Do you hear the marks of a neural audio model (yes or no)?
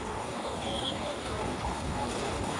yes